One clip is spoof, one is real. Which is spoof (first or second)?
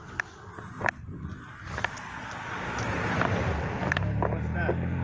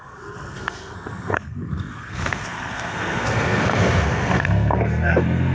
second